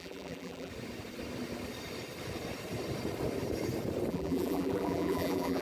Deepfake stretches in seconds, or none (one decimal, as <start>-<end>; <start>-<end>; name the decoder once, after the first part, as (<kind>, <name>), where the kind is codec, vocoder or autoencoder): 0.0-0.7 (vocoder, BigVGAN v2); 4.1-5.6